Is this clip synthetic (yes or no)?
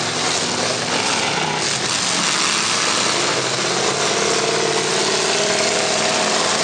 no